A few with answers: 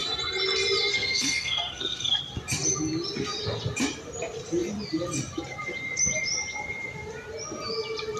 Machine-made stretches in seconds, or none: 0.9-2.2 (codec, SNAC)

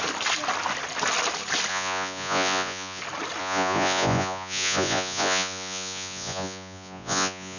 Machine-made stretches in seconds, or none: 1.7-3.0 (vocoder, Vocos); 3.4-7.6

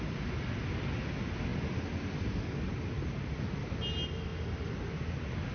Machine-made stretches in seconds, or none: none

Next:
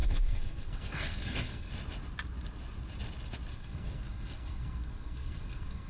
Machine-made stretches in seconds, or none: 0.0-1.7 (codec, SNAC); 3.5-5.9

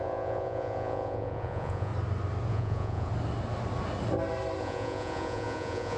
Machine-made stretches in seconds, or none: 0.0-1.9 (vocoder, Vocos); 2.5-3.1; 4.6-6.0

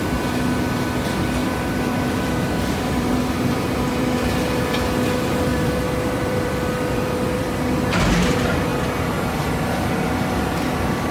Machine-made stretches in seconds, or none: 1.4-4.6 (vocoder, BigVGAN v2); 5.5-7.7

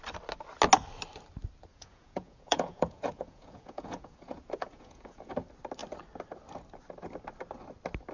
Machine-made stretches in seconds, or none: 1.7-5.3 (vocoder, Vocos)

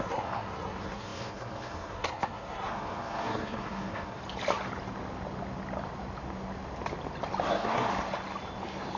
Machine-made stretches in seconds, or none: 0.0-4.2 (codec, SNAC); 7.5-7.9